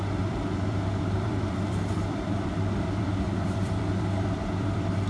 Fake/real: fake